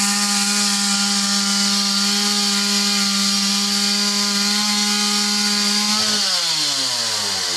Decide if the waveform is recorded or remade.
recorded